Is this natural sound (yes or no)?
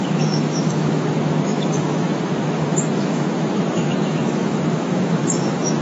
no